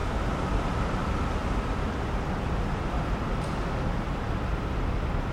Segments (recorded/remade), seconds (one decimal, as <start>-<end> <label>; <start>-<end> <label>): 0.0-5.3 recorded